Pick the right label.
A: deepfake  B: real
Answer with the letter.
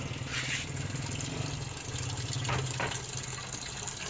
B